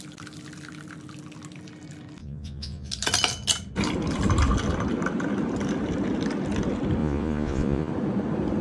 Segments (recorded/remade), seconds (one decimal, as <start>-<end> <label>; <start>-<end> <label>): 0.0-2.2 recorded; 2.2-2.9 remade; 2.9-7.0 recorded; 7.0-7.9 remade; 7.9-8.6 recorded